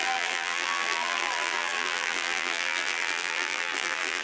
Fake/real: fake